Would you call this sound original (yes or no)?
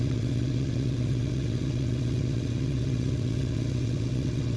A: no